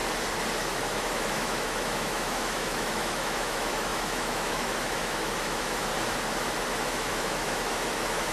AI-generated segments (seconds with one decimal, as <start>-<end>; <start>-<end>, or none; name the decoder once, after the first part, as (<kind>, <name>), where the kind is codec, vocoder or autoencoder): 0.6-5.9 (autoencoder, DAC-VAE); 6.8-8.3